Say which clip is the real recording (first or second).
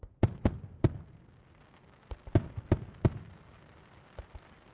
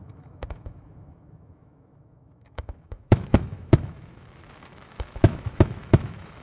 first